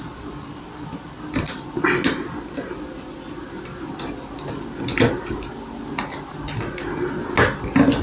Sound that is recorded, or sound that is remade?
recorded